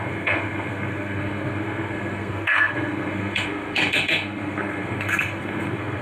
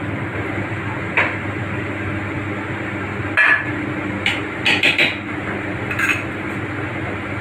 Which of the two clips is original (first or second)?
second